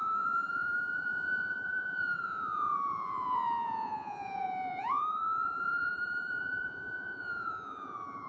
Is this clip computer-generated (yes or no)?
yes